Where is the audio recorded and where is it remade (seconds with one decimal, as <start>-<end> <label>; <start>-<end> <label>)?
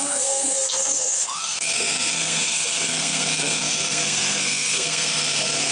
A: 0.0-5.7 remade